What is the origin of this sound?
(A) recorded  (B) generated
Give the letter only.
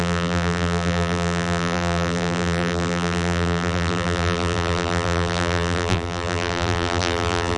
B